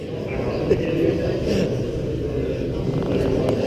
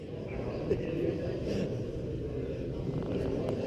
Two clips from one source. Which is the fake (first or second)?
second